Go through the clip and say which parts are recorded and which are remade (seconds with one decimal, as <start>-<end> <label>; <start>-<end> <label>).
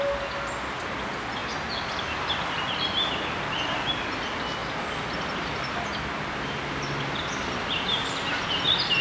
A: 0.0-9.0 recorded